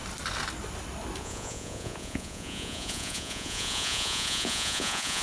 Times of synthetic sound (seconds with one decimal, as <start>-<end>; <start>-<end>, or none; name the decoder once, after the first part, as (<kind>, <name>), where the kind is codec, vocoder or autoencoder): 1.2-5.2 (vocoder, Vocos)